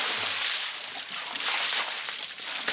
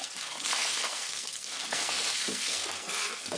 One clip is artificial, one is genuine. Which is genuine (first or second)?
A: first